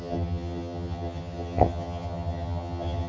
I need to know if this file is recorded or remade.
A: remade